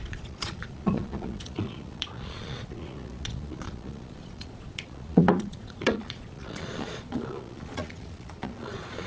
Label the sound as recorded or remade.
remade